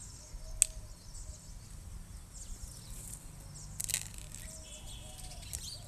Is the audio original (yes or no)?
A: yes